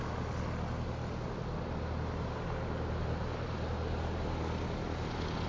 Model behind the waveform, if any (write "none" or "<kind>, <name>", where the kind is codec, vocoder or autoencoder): none